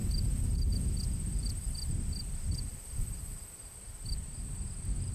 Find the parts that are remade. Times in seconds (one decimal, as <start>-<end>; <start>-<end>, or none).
0.0-0.8